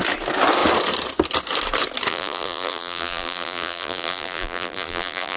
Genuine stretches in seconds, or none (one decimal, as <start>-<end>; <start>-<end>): 0.0-2.1